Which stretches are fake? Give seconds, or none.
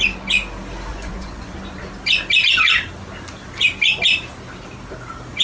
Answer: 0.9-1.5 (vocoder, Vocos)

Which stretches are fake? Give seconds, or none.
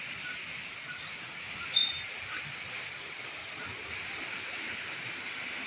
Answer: none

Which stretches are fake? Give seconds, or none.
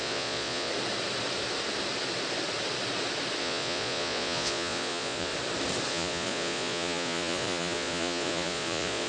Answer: 0.0-0.7 (vocoder, Vocos); 3.4-5.3; 5.9-9.1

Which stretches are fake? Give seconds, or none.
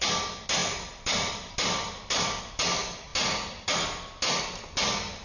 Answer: none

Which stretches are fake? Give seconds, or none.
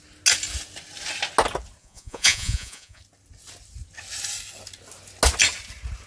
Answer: 1.8-3.0 (vocoder, Vocos)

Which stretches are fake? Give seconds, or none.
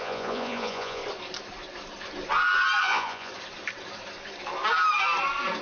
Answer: 0.0-1.0 (vocoder, Vocos); 2.8-3.3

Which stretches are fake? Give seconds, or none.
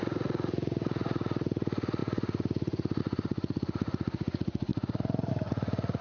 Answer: 0.0-6.0 (vocoder, Vocos)